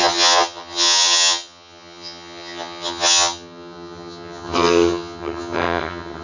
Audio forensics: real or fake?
fake